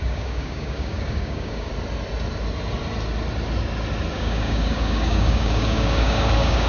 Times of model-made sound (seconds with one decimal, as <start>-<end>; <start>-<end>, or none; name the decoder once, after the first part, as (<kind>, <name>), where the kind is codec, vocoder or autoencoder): 0.0-1.7 (codec, DAC); 4.1-6.7